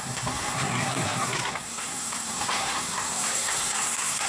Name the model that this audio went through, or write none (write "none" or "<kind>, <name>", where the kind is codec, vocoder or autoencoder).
codec, SNAC